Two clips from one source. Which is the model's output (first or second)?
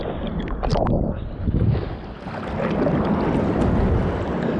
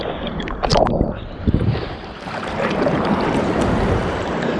second